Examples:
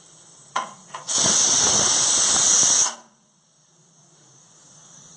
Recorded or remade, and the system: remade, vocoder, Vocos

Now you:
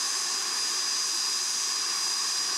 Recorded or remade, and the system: recorded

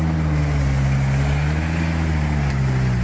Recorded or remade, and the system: recorded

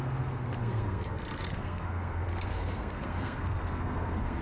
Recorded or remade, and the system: remade, codec, SNAC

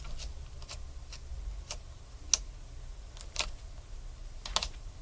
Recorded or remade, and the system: recorded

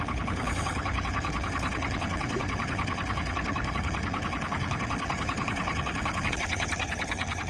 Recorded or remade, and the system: remade, codec, HILCodec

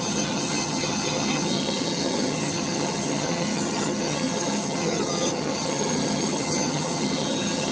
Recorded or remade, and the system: remade, vocoder, HiFi-GAN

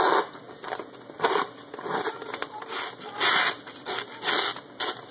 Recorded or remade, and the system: recorded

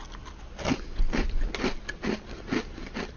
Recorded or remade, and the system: recorded